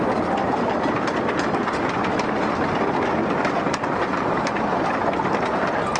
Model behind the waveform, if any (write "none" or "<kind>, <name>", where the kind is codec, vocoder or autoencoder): none